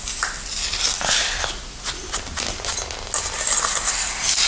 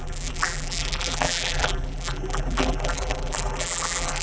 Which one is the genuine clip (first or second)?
first